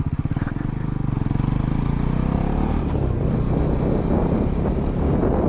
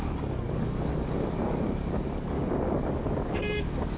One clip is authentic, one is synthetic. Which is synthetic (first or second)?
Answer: second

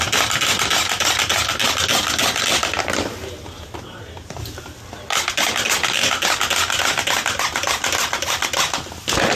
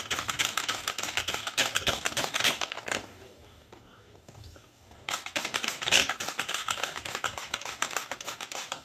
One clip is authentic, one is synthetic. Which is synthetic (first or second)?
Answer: second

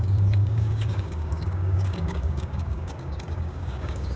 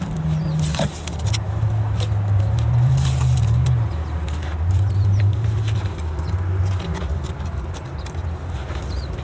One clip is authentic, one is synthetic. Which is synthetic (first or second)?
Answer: first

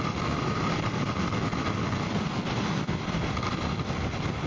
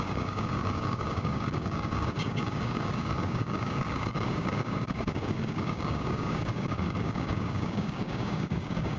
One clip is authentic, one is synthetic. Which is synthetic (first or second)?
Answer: second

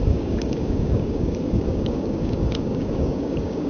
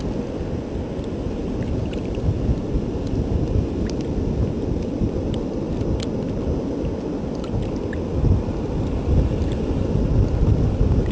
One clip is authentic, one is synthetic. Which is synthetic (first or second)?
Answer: first